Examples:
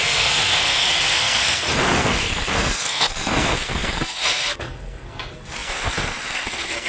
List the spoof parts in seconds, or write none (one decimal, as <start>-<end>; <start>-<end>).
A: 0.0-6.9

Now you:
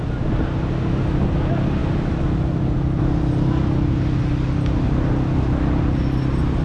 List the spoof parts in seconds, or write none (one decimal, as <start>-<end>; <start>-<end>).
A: none

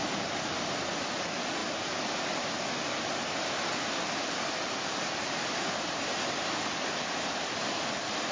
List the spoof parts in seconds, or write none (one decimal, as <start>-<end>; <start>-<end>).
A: none

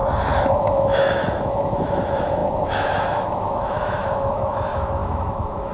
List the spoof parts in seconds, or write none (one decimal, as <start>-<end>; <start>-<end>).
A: 0.5-5.7

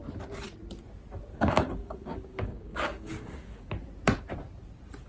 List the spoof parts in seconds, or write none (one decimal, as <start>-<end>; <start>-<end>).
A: 1.3-3.7

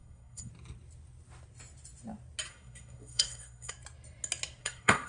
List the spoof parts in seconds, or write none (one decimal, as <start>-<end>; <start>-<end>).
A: 0.0-0.5; 2.5-3.7; 4.6-5.1

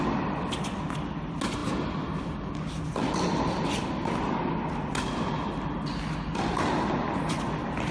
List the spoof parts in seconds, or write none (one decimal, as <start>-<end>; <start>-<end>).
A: none